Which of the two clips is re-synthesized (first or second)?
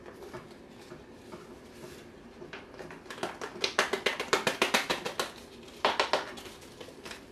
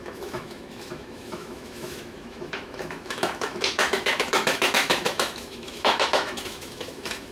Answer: second